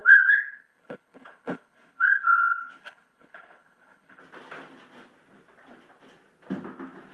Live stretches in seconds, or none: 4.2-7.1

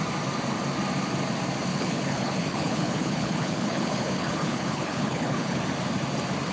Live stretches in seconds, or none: 0.0-1.7; 5.6-6.5

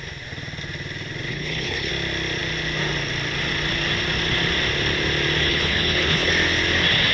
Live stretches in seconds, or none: 0.0-1.3; 1.9-5.4; 6.3-7.1

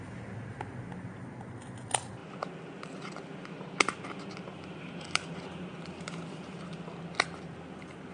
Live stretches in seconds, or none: 0.0-8.1

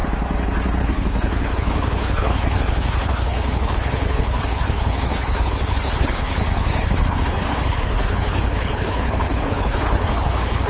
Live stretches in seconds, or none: 0.0-0.8

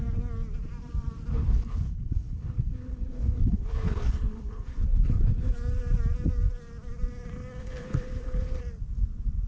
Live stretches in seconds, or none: 0.0-1.3; 5.5-7.6; 8.6-9.5

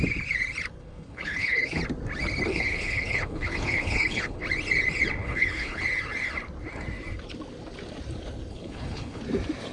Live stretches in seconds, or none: 0.0-0.8; 1.8-2.5; 4.4-5.2; 5.8-8.5; 9.2-9.7